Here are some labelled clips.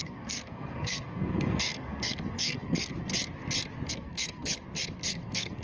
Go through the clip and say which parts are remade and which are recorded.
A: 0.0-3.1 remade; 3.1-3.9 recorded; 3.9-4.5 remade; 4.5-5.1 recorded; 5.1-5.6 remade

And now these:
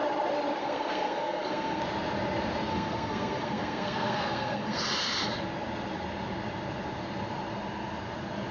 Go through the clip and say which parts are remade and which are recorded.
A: 0.0-0.6 recorded; 0.6-1.8 remade; 1.8-2.7 recorded; 2.7-4.8 remade; 4.8-8.5 recorded

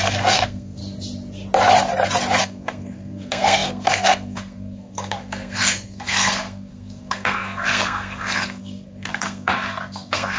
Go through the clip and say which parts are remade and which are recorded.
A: 0.0-0.8 remade; 0.8-2.4 recorded; 2.4-10.4 remade

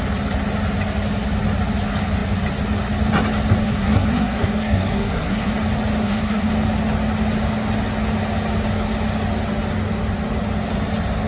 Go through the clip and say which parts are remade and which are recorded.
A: 0.0-3.6 recorded; 3.6-5.5 remade; 5.5-6.0 recorded; 6.0-6.5 remade; 6.5-11.3 recorded

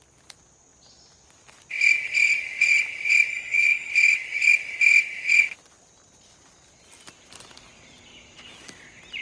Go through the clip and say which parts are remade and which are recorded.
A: 0.0-3.3 recorded; 3.3-3.9 remade; 3.9-9.2 recorded